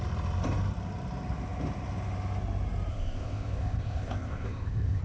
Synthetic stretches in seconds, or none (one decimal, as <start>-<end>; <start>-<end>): 2.9-5.0